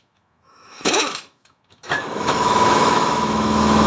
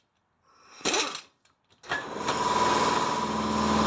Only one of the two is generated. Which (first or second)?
first